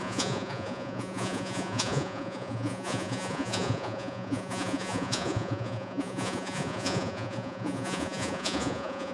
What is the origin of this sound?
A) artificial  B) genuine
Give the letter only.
A